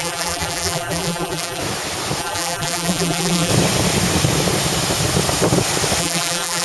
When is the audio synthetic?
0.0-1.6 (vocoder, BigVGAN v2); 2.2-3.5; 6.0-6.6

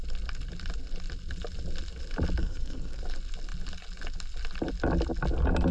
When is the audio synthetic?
2.4-3.0 (codec, SNAC)

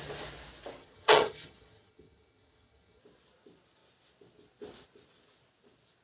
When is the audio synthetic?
0.8-3.0 (vocoder, HiFi-GAN)

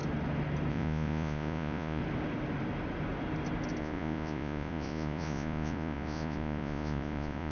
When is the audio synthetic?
0.7-2.0 (vocoder, Vocos); 3.8-7.5

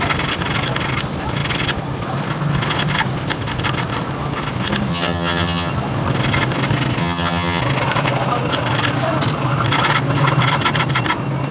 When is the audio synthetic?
4.9-5.7 (vocoder, HiFi-GAN); 7.0-7.6

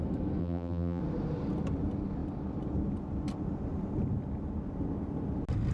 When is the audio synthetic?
0.4-1.0 (vocoder, BigVGAN v2)

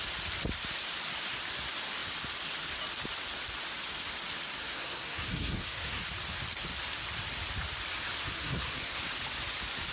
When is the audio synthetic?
4.6-6.0 (codec, SNAC); 8.3-9.0

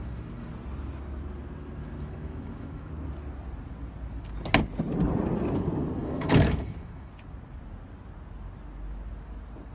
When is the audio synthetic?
0.0-0.5 (autoencoder, DAC-VAE); 1.8-2.9; 6.0-7.1